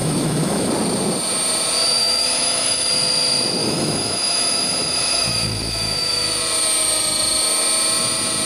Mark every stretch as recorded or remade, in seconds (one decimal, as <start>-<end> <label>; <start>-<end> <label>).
0.0-0.7 remade; 0.7-2.0 recorded; 2.0-2.9 remade; 2.9-3.6 recorded; 3.6-6.4 remade; 6.4-8.4 recorded